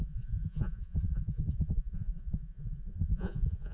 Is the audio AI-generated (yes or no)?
yes